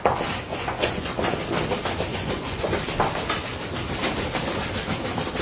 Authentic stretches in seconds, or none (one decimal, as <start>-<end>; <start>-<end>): 0.0-0.5; 1.1-2.1; 2.7-5.4